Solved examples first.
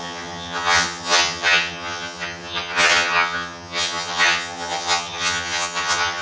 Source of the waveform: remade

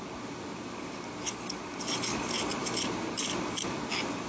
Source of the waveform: recorded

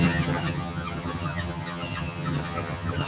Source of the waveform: remade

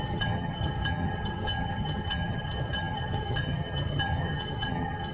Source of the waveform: remade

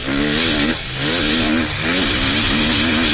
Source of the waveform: recorded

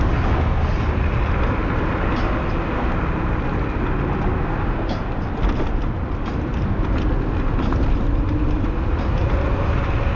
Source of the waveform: recorded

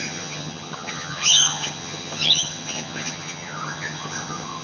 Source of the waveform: remade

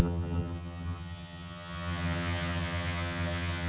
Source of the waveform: remade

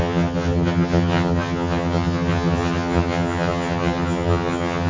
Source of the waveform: remade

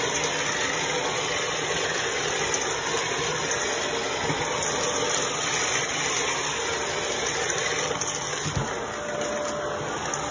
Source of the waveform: recorded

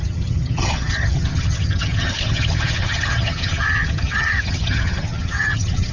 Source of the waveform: remade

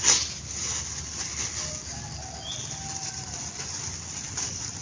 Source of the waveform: recorded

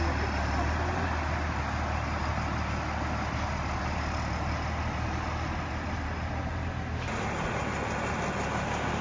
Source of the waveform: recorded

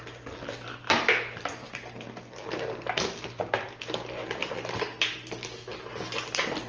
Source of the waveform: recorded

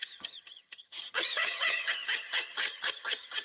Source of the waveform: remade